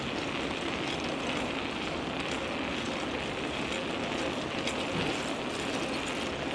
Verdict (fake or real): real